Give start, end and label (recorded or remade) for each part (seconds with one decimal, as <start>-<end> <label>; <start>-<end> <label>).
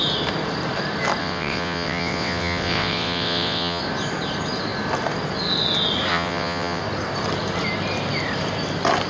0.0-1.2 recorded; 1.2-3.8 remade; 3.8-6.1 recorded; 6.1-6.8 remade; 6.8-9.1 recorded